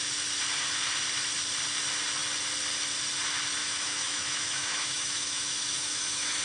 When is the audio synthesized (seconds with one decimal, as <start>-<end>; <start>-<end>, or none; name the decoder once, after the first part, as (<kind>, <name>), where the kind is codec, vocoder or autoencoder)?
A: 3.6-6.4 (autoencoder, DAC-VAE)